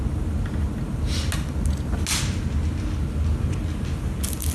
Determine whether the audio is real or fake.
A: real